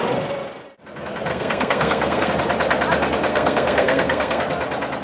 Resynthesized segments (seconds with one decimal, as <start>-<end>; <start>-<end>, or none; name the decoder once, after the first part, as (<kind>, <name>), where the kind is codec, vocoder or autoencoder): 1.3-2.3 (codec, SNAC); 3.3-4.4